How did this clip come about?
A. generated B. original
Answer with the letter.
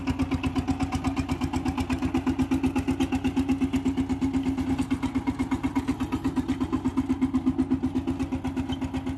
B